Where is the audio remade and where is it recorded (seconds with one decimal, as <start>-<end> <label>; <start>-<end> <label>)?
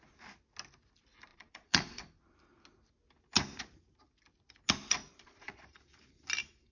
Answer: 0.0-1.3 recorded; 1.3-2.0 remade; 2.0-5.0 recorded; 5.0-5.6 remade; 5.6-6.7 recorded